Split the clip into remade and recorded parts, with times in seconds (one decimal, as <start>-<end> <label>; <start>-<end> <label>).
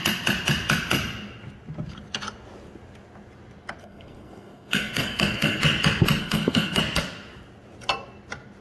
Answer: 0.0-3.8 recorded; 3.8-5.6 remade; 5.6-6.2 recorded; 6.2-6.8 remade; 6.8-8.6 recorded